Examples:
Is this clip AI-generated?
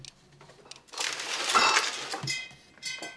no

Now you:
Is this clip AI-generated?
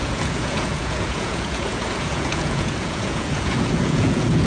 yes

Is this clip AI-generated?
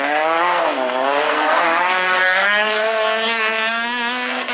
yes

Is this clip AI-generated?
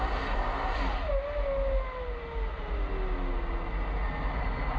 no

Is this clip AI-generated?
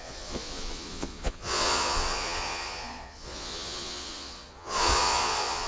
yes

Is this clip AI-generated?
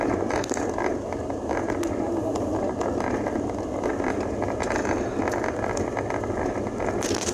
no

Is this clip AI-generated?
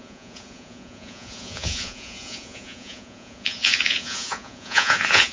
yes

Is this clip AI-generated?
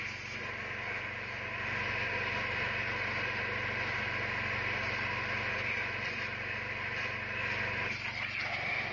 no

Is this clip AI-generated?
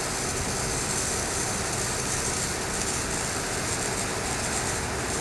no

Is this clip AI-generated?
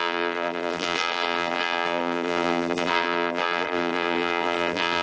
yes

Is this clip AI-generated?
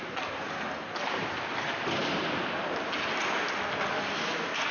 no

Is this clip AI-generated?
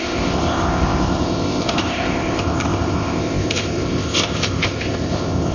yes